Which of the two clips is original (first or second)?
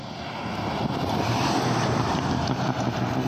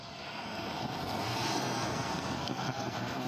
first